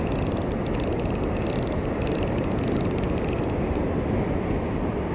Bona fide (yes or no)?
yes